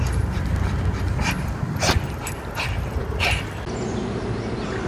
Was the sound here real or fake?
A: real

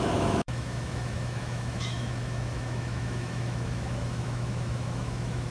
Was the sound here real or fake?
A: fake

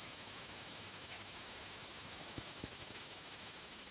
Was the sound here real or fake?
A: fake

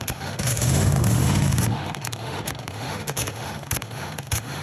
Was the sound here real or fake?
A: fake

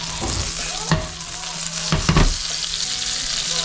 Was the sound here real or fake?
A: real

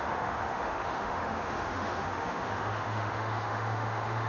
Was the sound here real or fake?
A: fake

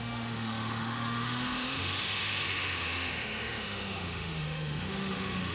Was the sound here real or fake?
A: fake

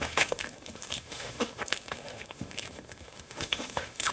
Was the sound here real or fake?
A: fake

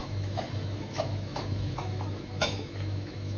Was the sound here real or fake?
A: fake